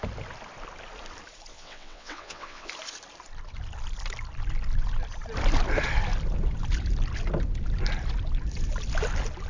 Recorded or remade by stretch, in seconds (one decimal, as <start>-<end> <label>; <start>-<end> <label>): 0.0-1.5 recorded; 1.5-2.7 remade; 2.7-9.5 recorded

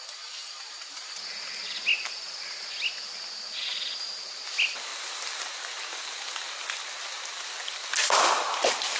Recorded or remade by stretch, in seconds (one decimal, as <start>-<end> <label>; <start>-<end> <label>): 0.0-9.0 recorded

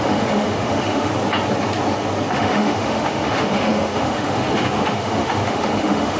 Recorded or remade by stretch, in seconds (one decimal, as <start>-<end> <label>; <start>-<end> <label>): 0.0-1.1 remade; 1.1-2.3 recorded; 2.3-6.2 remade

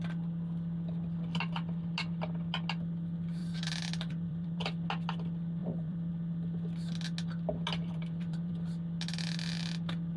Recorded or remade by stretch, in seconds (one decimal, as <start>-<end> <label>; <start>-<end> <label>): 0.0-3.4 recorded; 3.4-4.6 remade; 4.6-5.6 recorded; 5.6-6.1 remade; 6.1-7.8 recorded; 7.8-8.5 remade; 8.5-10.2 recorded

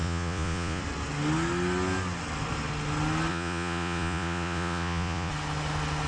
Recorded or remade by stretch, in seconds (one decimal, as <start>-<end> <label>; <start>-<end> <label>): 0.0-0.8 remade; 0.8-3.3 recorded; 3.3-5.3 remade; 5.3-6.1 recorded

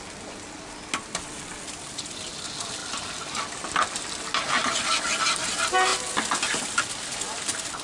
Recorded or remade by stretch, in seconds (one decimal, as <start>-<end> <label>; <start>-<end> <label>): 0.0-7.8 recorded

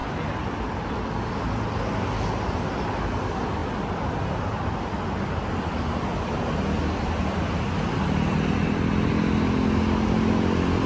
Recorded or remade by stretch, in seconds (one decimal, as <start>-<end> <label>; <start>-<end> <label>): 0.0-10.9 recorded